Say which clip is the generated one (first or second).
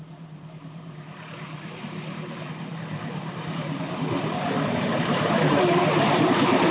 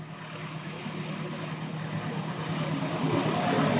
first